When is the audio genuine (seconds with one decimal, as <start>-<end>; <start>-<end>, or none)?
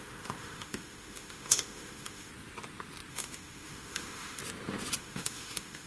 2.3-3.1; 4.4-5.0